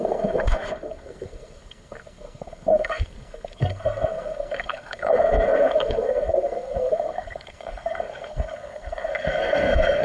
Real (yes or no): no